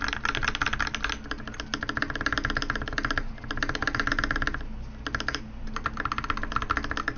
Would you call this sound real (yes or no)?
yes